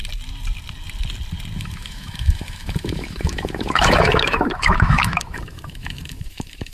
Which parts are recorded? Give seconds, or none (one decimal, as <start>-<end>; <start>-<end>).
0.0-1.6

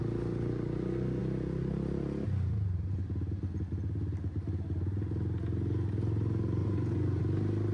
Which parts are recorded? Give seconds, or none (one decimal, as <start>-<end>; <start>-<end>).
0.0-6.6; 7.2-7.7

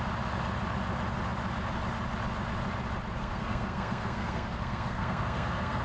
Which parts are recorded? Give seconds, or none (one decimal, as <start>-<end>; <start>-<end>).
0.0-3.2